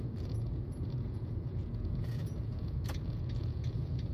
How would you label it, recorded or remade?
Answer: remade